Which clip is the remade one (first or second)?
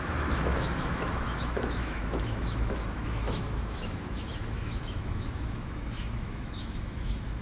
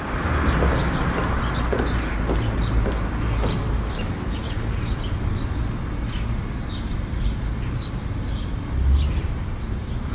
first